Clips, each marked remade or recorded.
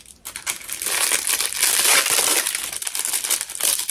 recorded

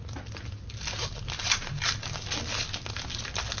recorded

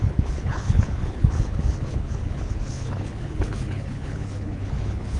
remade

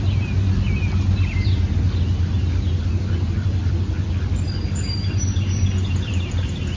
recorded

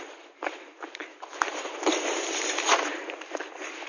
remade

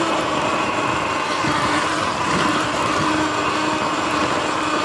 recorded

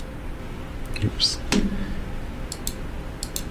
recorded